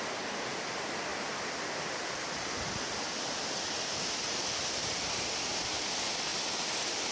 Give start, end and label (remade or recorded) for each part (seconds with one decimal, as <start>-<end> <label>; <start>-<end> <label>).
0.0-7.1 recorded